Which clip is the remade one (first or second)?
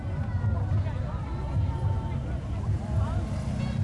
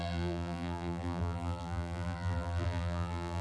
second